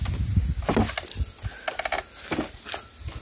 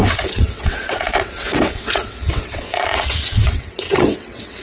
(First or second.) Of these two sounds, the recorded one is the first